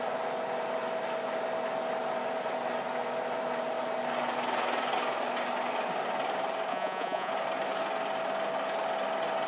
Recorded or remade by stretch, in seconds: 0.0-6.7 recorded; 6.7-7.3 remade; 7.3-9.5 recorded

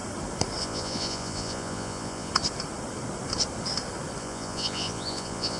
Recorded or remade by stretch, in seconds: 0.0-0.6 recorded; 0.6-2.3 remade; 2.3-4.2 recorded; 4.2-5.6 remade